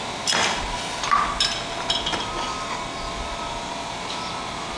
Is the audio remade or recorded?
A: recorded